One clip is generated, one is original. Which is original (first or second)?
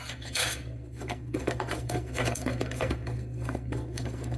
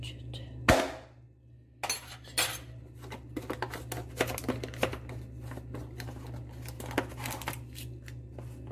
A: second